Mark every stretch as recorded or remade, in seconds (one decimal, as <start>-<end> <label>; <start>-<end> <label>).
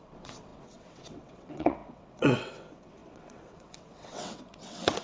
0.0-5.0 remade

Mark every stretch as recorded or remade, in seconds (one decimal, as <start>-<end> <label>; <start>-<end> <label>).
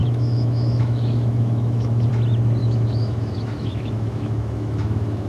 0.0-2.1 remade; 2.1-2.6 recorded; 2.6-5.3 remade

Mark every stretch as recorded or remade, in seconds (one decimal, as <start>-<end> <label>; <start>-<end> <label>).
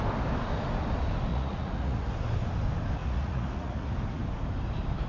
0.0-1.3 recorded; 1.3-2.1 remade; 2.1-3.0 recorded; 3.0-3.9 remade; 3.9-5.1 recorded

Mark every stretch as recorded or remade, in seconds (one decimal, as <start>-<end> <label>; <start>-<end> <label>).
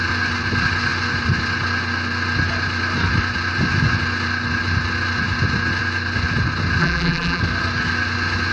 0.0-6.8 recorded; 6.8-7.4 remade; 7.4-8.5 recorded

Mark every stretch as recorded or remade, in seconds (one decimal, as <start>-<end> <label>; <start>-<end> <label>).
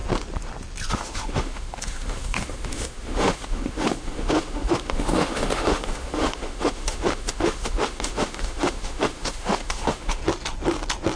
0.0-0.9 recorded; 0.9-10.2 remade; 10.2-11.2 recorded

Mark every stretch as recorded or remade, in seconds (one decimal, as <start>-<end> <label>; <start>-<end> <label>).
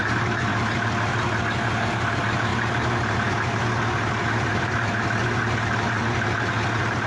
0.0-2.5 recorded; 2.5-3.4 remade; 3.4-4.2 recorded; 4.2-4.9 remade; 4.9-7.1 recorded